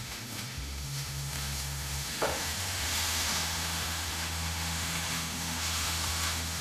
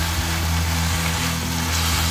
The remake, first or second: first